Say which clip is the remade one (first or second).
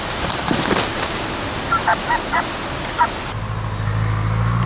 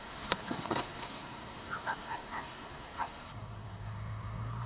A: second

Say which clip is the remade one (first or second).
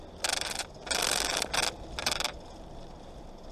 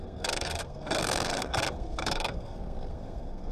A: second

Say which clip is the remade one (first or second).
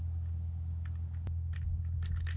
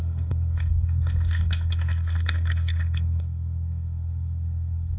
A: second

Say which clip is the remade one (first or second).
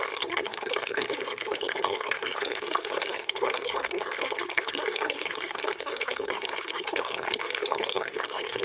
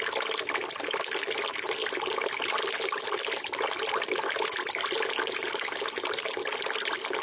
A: first